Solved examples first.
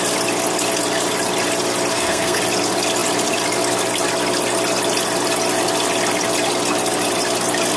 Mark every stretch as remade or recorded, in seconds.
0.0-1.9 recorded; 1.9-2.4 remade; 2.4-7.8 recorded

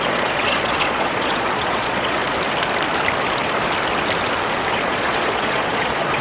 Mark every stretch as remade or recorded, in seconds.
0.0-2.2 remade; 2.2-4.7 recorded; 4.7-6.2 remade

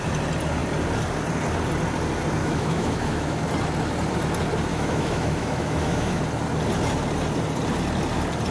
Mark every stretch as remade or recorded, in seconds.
0.0-2.4 recorded; 2.4-3.4 remade; 3.4-4.7 recorded; 4.7-6.2 remade; 6.2-8.5 recorded

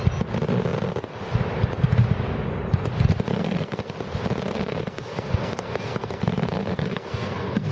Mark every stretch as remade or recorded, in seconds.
0.0-3.3 recorded; 3.3-3.9 remade; 3.9-4.5 recorded; 4.5-7.7 remade

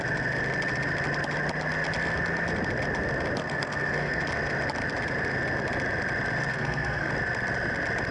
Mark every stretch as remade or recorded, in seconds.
0.0-3.4 recorded; 3.4-4.2 remade; 4.2-6.5 recorded; 6.5-7.1 remade; 7.1-8.1 recorded

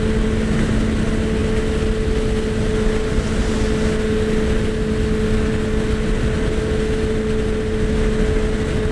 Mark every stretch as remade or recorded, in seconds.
0.0-8.9 recorded

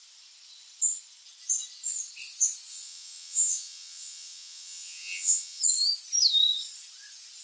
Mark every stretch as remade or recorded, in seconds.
0.0-2.7 recorded; 2.7-5.6 remade; 5.6-7.4 recorded

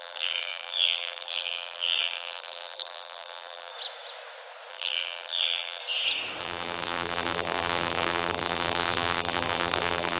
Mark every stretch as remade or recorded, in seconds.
0.0-3.7 remade; 3.7-4.7 recorded; 4.7-5.8 remade; 5.8-6.4 recorded; 6.4-10.2 remade